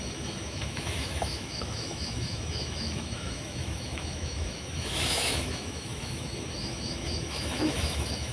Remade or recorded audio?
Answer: remade